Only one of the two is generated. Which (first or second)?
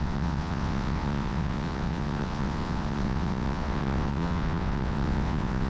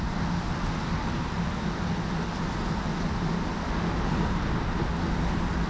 first